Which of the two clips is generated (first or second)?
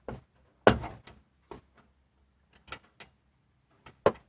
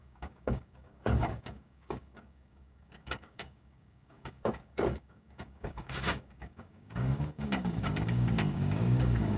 second